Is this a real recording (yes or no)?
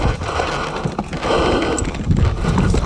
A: yes